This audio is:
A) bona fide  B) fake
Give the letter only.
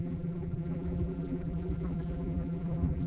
B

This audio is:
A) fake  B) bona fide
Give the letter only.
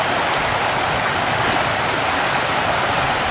B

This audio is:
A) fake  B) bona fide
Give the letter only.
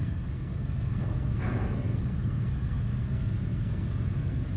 A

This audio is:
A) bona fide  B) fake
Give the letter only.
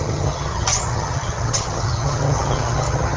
B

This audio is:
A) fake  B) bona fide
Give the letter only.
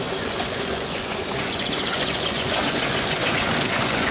A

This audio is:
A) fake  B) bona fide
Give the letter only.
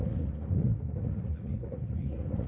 A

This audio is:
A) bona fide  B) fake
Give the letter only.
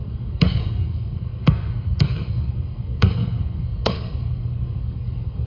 B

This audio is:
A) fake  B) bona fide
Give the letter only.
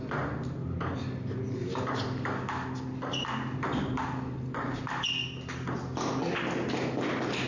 B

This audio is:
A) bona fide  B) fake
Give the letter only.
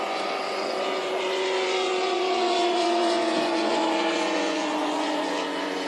B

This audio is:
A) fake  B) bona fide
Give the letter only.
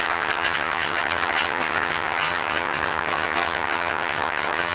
A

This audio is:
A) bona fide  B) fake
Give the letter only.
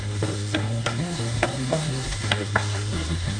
B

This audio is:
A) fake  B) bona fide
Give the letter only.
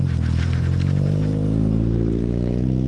A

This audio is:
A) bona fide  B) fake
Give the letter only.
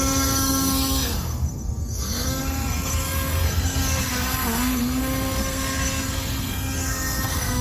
B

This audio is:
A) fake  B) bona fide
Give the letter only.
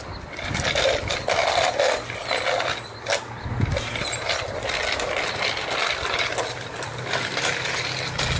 B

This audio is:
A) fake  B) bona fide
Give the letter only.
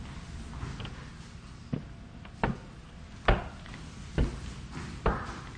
B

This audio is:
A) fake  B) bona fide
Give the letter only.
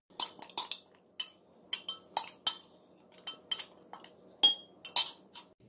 B